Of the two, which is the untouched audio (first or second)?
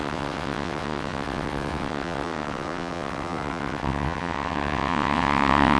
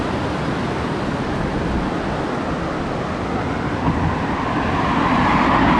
second